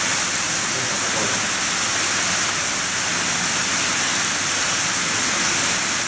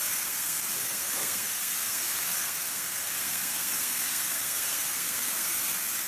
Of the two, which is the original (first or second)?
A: first